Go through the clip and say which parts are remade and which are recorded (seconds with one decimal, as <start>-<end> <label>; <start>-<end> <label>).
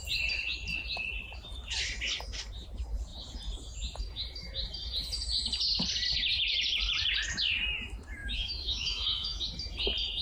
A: 0.0-8.2 recorded; 8.2-9.4 remade; 9.4-10.2 recorded